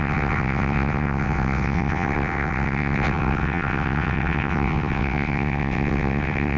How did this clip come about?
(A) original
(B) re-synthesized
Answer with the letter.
B